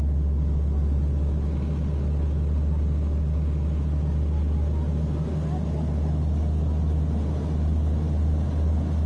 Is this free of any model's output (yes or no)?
yes